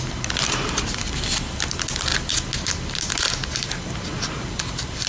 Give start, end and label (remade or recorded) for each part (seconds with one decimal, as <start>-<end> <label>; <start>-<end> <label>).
0.0-5.1 recorded